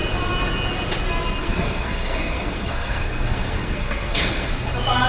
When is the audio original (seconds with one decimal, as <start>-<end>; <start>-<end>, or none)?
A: 0.0-1.4; 4.5-5.1